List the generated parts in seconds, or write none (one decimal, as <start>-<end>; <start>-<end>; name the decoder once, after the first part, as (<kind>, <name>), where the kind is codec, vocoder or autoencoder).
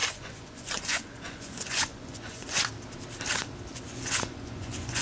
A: 0.0-2.7 (vocoder, Vocos); 3.7-5.0